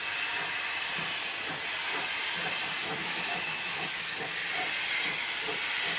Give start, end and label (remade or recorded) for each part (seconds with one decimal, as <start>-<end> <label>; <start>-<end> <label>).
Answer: 0.0-3.0 recorded; 3.0-4.2 remade; 4.2-6.0 recorded